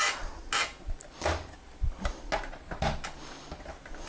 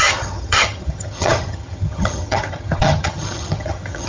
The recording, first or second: first